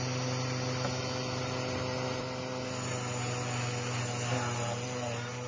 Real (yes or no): yes